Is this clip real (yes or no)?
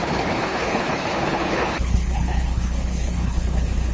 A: no